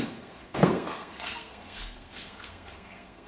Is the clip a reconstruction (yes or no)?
yes